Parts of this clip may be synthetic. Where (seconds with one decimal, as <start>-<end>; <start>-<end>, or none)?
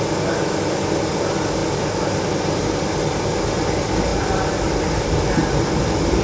1.6-2.6; 4.1-4.8